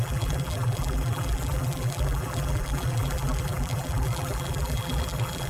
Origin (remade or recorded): remade